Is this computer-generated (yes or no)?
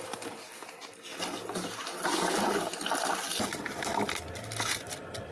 no